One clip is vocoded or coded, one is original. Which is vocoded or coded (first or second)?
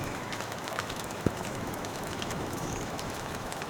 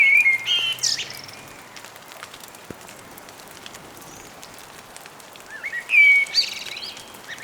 first